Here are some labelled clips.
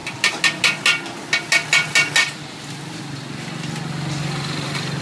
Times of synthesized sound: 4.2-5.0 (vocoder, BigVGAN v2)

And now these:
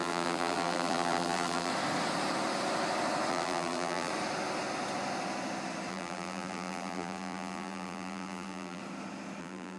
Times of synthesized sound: 0.0-1.7 (vocoder, BigVGAN v2); 3.3-4.1; 5.9-8.8; 9.4-9.8

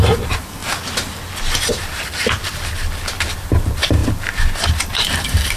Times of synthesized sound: 0.0-0.6 (vocoder, BigVGAN v2); 1.7-2.4; 3.4-4.0; 4.7-5.6